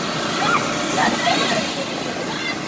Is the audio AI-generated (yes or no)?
no